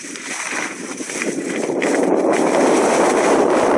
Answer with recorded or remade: remade